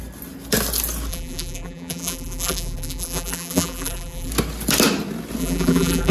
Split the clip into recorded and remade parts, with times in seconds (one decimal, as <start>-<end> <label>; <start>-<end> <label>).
0.0-1.1 recorded; 1.1-4.3 remade; 4.3-5.4 recorded; 5.4-6.1 remade